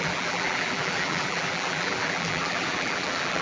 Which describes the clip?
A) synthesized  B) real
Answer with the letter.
A